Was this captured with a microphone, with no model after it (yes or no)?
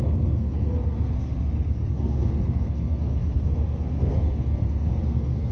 no